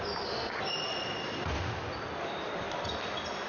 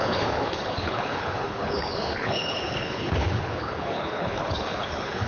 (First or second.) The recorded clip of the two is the first